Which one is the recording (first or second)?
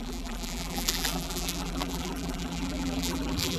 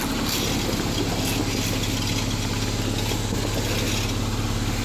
second